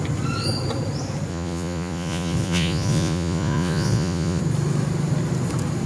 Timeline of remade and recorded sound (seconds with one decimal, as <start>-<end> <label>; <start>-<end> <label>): 0.0-1.3 recorded; 1.3-4.4 remade; 4.4-5.9 recorded